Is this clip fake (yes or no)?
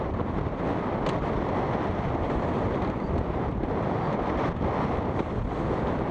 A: no